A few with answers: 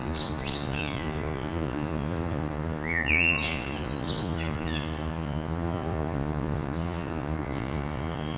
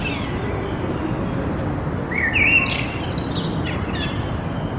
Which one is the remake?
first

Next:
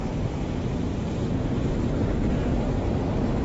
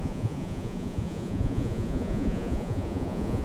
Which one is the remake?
second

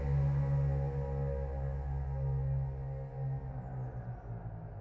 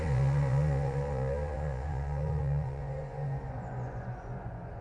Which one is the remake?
second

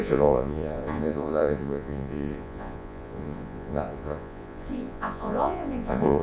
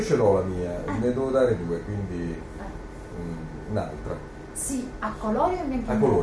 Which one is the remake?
first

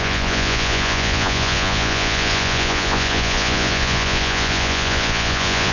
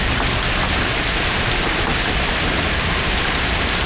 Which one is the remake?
first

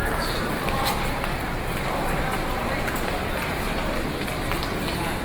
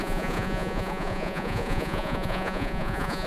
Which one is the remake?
second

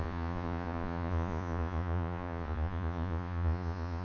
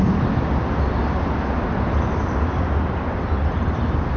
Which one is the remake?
first